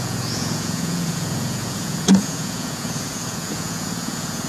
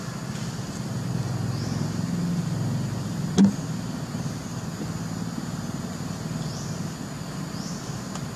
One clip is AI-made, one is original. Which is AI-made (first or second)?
first